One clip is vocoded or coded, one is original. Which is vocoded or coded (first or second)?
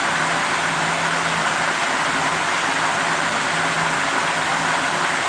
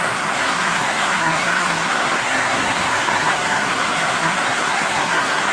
second